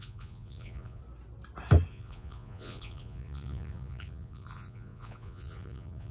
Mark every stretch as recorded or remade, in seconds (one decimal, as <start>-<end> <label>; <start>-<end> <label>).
0.0-1.0 remade; 1.0-1.9 recorded; 1.9-6.1 remade